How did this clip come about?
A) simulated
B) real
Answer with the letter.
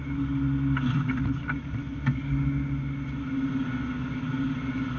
B